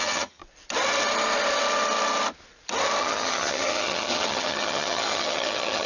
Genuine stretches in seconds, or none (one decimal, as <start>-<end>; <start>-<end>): 0.4-3.0